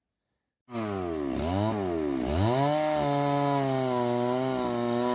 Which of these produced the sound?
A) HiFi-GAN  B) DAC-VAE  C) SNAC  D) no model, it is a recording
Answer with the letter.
D